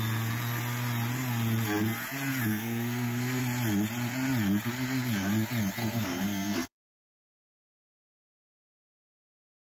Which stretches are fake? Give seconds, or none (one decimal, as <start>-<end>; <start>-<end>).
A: 2.5-3.4; 5.8-6.8